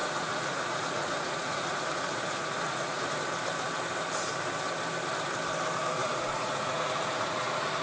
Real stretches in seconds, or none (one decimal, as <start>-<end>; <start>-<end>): 3.2-6.0